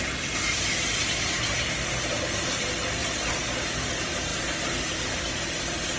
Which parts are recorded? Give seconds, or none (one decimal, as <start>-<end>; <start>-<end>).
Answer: 3.0-3.8